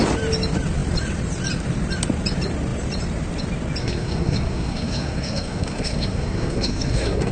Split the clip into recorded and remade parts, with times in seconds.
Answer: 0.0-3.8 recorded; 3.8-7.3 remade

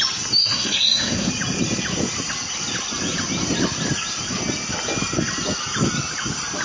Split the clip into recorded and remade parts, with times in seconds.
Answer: 0.0-0.4 recorded; 0.4-1.3 remade; 1.3-6.6 recorded

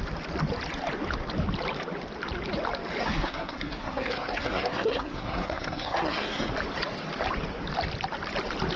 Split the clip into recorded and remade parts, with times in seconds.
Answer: 0.0-3.0 recorded; 3.0-6.5 remade; 6.5-8.8 recorded

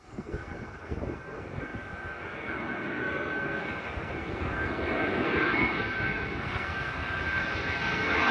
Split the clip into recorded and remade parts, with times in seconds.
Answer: 0.0-8.3 remade

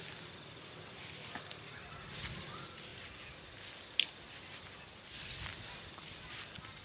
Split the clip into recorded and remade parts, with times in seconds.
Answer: 0.0-6.8 recorded

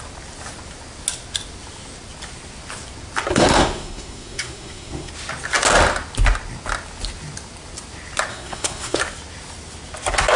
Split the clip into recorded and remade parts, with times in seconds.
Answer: 0.0-3.3 recorded; 3.3-5.1 remade; 5.1-8.3 recorded; 8.3-9.0 remade; 9.0-10.4 recorded

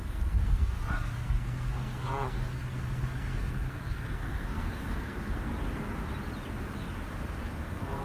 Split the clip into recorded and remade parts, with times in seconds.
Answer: 0.0-5.5 remade; 5.5-7.5 recorded; 7.5-8.0 remade

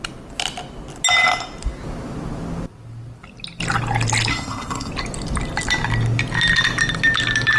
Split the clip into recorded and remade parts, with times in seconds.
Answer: 0.0-4.3 recorded; 4.3-4.9 remade; 4.9-7.6 recorded